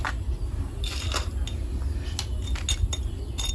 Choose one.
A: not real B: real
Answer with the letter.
B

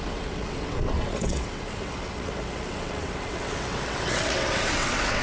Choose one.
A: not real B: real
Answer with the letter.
A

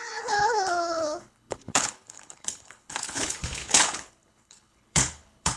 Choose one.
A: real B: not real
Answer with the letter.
B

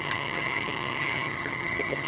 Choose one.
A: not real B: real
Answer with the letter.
A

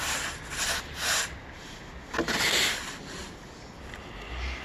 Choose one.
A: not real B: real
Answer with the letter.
B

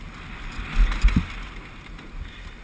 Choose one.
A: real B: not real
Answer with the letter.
A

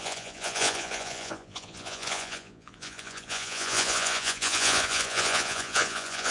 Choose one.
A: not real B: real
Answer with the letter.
A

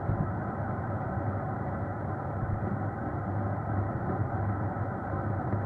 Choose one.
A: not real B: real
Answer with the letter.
B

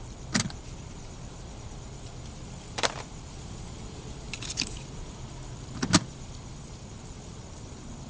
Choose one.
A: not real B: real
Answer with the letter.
A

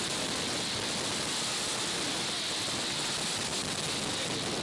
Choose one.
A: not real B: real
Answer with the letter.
B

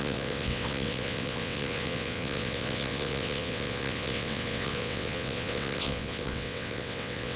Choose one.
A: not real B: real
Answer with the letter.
A